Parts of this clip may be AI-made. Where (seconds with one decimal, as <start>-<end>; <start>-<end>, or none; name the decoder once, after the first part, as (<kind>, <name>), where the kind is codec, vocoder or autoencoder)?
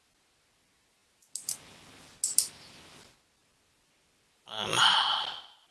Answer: none